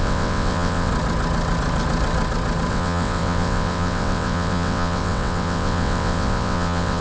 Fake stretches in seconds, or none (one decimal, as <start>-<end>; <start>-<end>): 0.0-0.9; 2.7-7.0